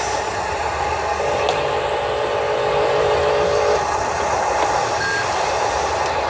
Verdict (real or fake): real